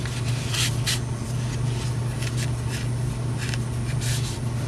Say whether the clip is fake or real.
real